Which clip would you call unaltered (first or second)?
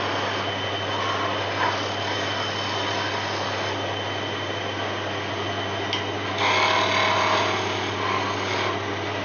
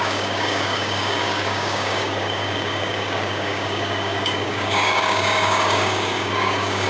first